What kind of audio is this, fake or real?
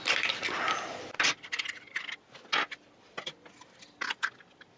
real